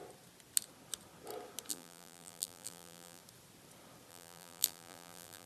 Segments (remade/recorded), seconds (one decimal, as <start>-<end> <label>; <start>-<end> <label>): 0.0-1.7 recorded; 1.7-3.2 remade; 3.2-4.1 recorded; 4.1-5.5 remade